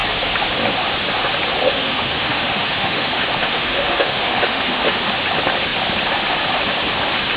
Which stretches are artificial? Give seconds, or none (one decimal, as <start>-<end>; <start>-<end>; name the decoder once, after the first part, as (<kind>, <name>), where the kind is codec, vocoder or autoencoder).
1.6-5.0 (autoencoder, DAC-VAE)

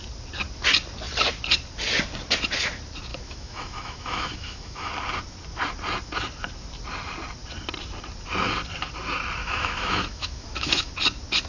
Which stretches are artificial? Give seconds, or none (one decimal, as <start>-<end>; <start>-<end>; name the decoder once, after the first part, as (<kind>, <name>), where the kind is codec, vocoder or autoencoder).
3.1-4.9 (autoencoder, DAC-VAE); 9.4-10.9

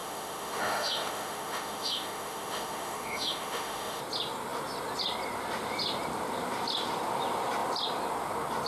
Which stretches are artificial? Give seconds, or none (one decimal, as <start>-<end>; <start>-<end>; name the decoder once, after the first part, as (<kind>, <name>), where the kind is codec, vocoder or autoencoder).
0.0-4.0 (autoencoder, DAC-VAE)